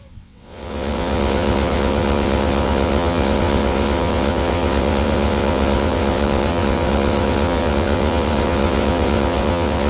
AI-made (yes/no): yes